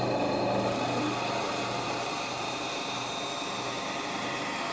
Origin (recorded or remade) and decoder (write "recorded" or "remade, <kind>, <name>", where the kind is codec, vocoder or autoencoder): remade, vocoder, BigVGAN v2